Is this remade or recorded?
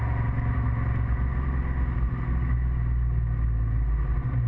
recorded